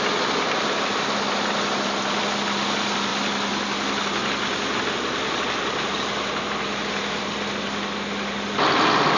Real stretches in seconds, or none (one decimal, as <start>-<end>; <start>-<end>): 0.0-9.2